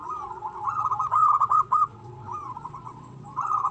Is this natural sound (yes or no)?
no